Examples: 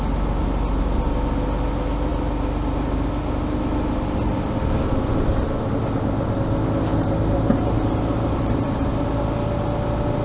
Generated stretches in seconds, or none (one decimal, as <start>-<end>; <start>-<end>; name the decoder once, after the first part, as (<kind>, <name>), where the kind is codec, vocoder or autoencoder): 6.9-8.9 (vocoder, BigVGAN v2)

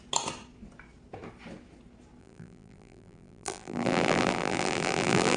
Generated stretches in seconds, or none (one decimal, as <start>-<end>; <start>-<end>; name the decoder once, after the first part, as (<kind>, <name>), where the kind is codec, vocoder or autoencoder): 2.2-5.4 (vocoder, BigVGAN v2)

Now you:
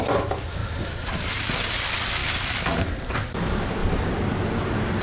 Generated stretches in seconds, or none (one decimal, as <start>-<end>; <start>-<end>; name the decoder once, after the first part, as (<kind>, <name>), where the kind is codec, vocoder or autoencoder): 0.0-5.0 (vocoder, BigVGAN v2)

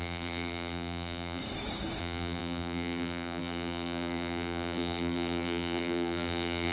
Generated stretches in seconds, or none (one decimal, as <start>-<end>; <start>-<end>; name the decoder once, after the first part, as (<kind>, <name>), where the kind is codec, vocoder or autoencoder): 0.0-1.4 (vocoder, BigVGAN v2); 2.0-6.7